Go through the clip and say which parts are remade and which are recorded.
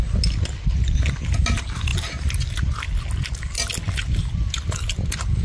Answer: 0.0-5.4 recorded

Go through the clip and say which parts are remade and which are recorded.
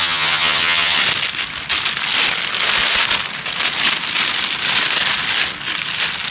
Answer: 0.0-1.0 remade; 1.0-6.3 recorded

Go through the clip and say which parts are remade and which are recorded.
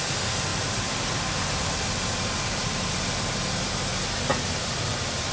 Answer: 0.0-0.5 recorded; 0.5-3.7 remade; 3.7-4.3 recorded; 4.3-5.3 remade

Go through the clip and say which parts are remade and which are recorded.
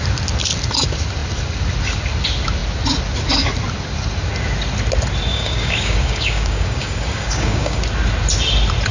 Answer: 0.0-5.3 recorded; 5.3-7.8 remade; 7.8-8.9 recorded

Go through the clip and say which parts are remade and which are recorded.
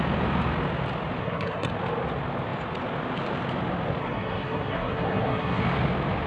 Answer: 0.0-1.2 recorded; 1.2-1.7 remade; 1.7-4.0 recorded; 4.0-5.6 remade; 5.6-6.3 recorded